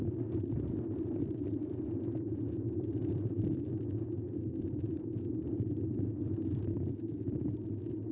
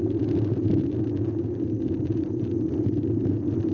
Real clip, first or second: second